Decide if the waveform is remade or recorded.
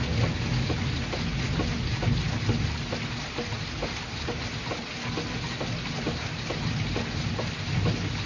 recorded